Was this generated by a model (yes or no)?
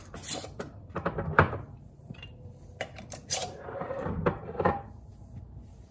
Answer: yes